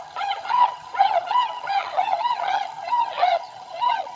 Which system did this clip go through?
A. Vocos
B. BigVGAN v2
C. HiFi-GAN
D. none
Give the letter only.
C